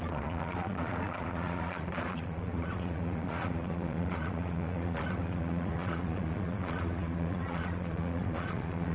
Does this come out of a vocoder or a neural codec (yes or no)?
yes